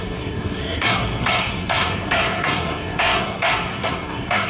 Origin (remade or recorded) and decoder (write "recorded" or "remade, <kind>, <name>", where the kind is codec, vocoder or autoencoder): remade, codec, SNAC